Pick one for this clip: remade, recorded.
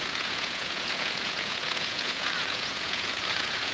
remade